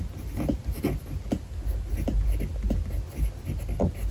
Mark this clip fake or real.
real